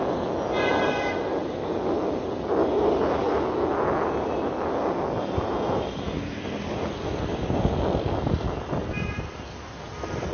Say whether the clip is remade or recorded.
remade